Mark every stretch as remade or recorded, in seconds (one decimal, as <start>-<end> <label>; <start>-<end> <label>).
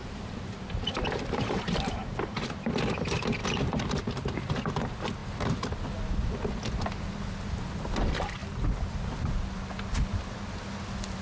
0.0-2.5 remade; 2.5-3.4 recorded; 3.4-4.0 remade; 4.0-11.2 recorded